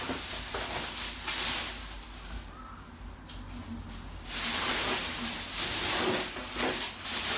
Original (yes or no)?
yes